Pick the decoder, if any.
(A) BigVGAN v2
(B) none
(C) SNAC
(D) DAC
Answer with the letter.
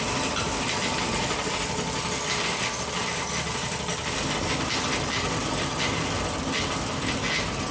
B